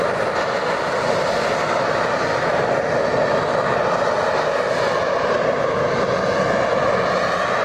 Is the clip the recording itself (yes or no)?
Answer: yes